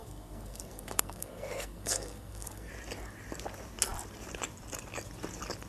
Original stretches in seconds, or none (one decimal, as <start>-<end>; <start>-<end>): 2.7-5.7